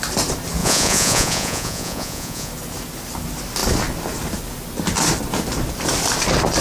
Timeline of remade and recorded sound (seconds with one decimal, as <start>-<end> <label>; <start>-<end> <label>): 0.0-0.6 recorded; 0.6-2.5 remade; 2.5-6.6 recorded